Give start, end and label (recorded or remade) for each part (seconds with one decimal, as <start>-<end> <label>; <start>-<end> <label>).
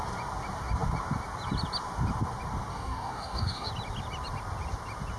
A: 0.0-2.7 recorded; 2.7-3.7 remade; 3.7-5.2 recorded